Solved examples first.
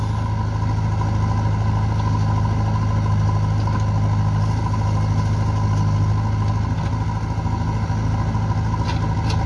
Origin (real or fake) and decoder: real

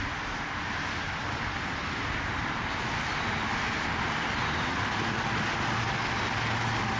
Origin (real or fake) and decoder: real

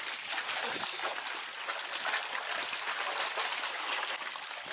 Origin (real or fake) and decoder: real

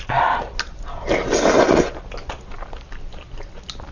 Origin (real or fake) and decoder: real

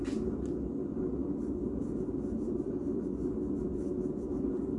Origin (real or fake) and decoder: real